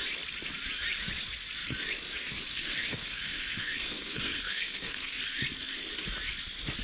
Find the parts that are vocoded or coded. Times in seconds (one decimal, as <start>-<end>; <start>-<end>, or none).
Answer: 2.5-5.2